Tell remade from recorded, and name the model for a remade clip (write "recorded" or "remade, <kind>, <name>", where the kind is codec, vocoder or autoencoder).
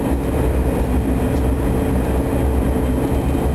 recorded